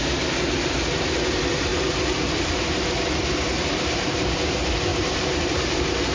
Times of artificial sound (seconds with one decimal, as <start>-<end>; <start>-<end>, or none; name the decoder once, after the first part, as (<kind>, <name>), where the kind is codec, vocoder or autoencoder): 1.7-2.7 (vocoder, BigVGAN v2); 4.9-6.1